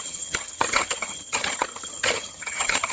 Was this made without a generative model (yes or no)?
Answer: no